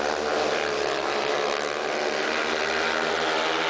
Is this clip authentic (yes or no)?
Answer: yes